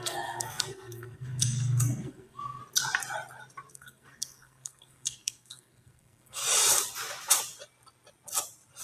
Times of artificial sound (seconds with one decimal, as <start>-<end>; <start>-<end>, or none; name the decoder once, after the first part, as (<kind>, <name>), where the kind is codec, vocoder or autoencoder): 0.0-2.6 (codec, SNAC); 3.7-6.4